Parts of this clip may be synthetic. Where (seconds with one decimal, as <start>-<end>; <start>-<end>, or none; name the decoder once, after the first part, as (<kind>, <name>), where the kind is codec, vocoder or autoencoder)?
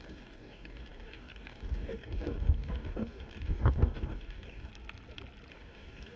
0.0-4.7 (codec, DAC); 5.5-6.2